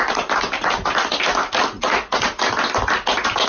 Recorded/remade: recorded